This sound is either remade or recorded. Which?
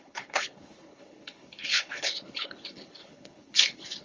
remade